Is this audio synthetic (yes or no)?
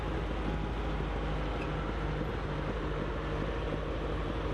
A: no